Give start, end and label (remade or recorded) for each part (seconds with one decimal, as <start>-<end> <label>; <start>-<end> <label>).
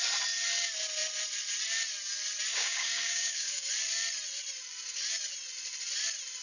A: 0.0-2.5 recorded; 2.5-3.7 remade; 3.7-6.4 recorded